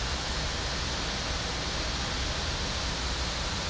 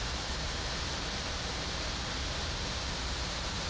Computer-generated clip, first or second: second